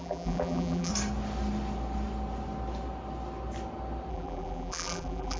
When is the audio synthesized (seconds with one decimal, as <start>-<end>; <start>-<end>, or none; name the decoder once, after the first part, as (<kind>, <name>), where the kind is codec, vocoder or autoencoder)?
0.0-0.9 (vocoder, BigVGAN v2); 4.1-5.4